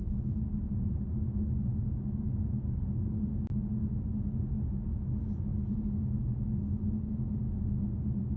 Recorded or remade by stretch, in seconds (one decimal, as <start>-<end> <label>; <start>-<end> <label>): 0.0-8.4 recorded